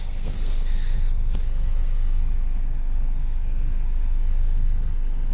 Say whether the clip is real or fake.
fake